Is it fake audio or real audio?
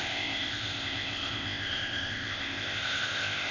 fake